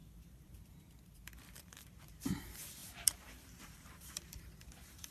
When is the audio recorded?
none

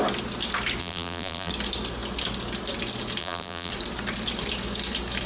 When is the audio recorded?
0.0-0.8; 1.5-3.2; 3.7-5.3

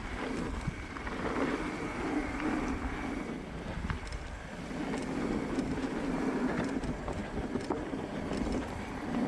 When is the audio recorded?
0.0-9.3

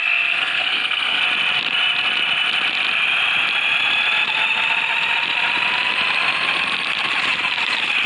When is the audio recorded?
1.2-8.1

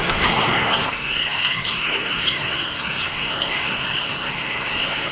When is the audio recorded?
none

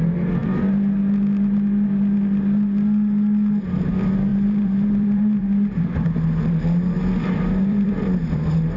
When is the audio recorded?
0.0-4.3

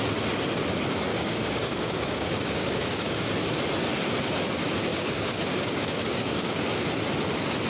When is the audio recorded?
0.0-1.1; 3.2-4.9; 6.6-7.7

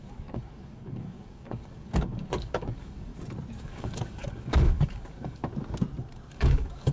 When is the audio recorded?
3.1-3.6; 5.4-6.3